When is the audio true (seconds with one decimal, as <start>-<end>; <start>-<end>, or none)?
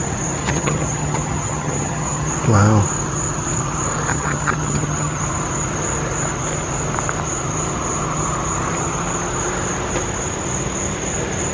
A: 0.0-0.4; 2.3-4.1; 5.2-11.5